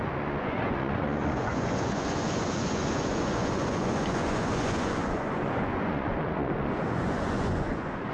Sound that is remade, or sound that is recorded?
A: remade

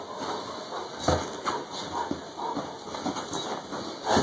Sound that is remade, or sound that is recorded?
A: recorded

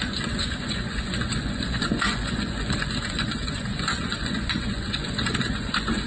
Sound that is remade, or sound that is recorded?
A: remade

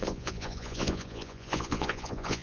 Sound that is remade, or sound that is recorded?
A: remade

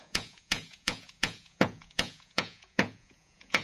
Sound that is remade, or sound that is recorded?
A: remade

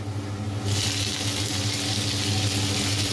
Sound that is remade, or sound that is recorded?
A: recorded